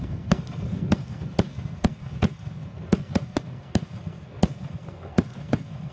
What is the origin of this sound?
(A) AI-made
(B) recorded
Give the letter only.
A